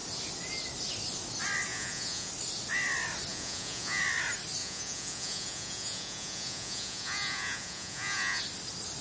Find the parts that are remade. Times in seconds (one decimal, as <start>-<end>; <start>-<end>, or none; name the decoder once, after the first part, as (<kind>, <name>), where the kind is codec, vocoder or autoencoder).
1.7-2.3 (vocoder, Vocos); 3.3-4.0; 4.6-8.4